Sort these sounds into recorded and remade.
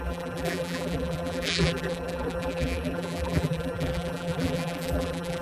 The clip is remade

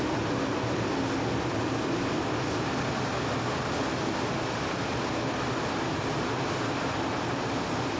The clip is recorded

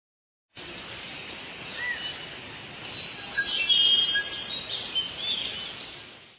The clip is recorded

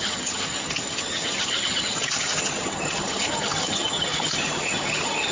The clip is remade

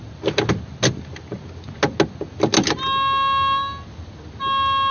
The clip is recorded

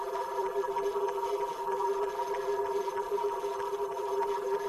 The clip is remade